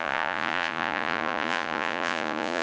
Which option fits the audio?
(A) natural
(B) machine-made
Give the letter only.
B